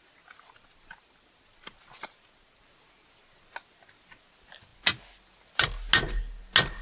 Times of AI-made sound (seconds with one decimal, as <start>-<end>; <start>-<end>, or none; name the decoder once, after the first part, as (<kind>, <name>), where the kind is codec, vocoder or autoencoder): none